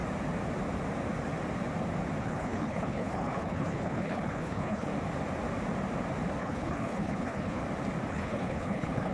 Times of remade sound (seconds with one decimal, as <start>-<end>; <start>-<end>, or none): 2.2-4.9; 6.4-7.6; 8.1-9.1